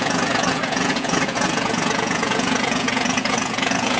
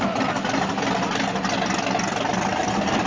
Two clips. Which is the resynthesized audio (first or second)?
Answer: first